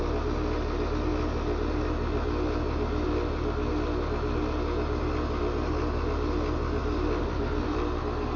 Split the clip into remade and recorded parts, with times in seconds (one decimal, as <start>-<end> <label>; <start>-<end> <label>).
0.0-6.8 recorded; 6.8-8.0 remade; 8.0-8.4 recorded